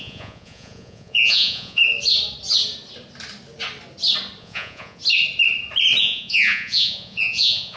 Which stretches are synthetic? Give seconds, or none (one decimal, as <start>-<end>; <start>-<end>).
0.0-1.8; 4.4-5.0; 6.0-7.8